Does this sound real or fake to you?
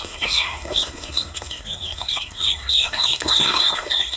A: fake